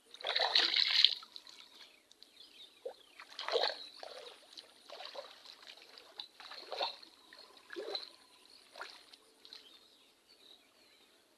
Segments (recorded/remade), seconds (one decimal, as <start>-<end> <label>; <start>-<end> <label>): 0.0-5.4 remade; 5.4-6.1 recorded; 6.1-11.4 remade